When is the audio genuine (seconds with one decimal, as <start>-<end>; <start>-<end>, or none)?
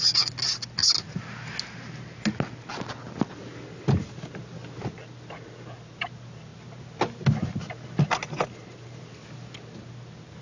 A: 0.0-2.7; 3.4-10.4